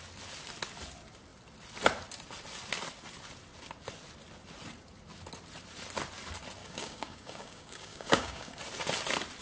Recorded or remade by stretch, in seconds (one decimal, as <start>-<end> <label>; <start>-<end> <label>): 0.0-6.6 recorded; 6.6-8.5 remade; 8.5-9.4 recorded